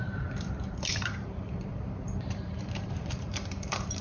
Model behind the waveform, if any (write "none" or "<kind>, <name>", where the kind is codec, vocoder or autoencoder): vocoder, BigVGAN v2